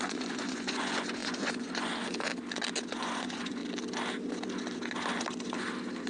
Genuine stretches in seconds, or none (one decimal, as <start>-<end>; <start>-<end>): 2.3-2.9; 3.6-6.1